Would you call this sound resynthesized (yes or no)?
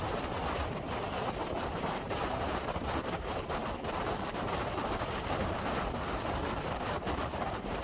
yes